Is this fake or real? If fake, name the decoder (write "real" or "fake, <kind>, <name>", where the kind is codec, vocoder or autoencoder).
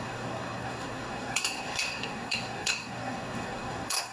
fake, codec, SNAC